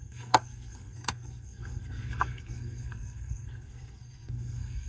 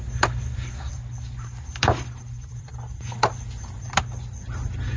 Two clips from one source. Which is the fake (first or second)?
first